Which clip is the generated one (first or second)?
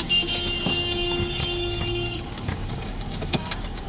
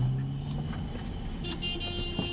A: first